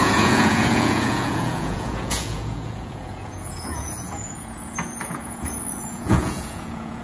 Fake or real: fake